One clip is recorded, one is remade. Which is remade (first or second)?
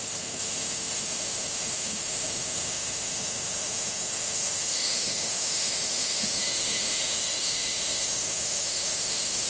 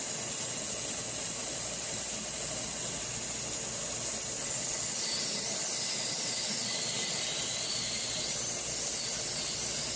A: first